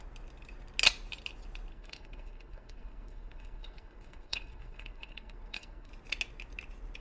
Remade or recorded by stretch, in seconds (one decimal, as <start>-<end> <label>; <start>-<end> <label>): 0.0-1.7 recorded; 1.7-5.9 remade; 5.9-7.0 recorded